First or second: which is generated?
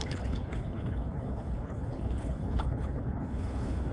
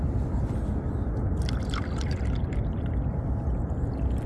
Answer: first